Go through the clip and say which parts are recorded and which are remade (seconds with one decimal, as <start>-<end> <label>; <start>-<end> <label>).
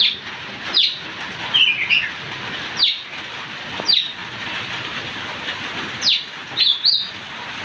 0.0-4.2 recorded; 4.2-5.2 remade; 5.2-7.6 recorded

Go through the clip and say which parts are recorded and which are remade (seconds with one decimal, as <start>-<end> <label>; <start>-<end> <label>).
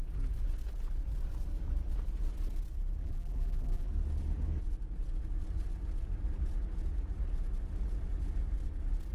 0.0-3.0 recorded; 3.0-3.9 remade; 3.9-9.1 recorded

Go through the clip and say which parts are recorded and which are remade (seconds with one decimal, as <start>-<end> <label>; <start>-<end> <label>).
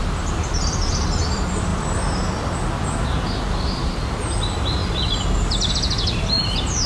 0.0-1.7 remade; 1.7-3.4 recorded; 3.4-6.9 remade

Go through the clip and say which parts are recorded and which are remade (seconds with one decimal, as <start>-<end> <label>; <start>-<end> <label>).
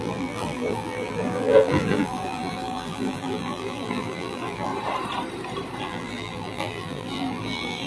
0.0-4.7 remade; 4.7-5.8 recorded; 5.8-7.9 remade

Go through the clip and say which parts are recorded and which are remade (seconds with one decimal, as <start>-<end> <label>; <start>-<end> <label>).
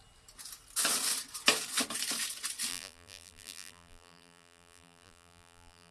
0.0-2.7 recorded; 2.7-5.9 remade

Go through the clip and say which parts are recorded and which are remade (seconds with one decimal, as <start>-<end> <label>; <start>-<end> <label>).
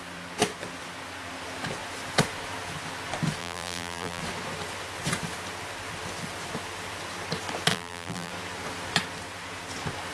0.0-3.4 recorded; 3.4-4.2 remade; 4.2-7.7 recorded; 7.7-8.3 remade; 8.3-10.1 recorded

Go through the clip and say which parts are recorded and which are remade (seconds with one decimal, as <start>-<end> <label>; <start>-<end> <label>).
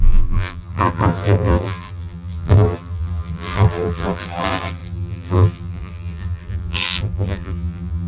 0.0-8.1 remade